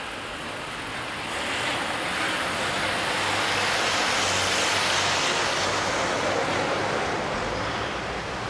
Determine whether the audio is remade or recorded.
recorded